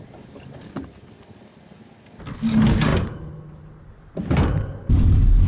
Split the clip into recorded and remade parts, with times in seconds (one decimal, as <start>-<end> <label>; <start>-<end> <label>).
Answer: 0.0-5.5 recorded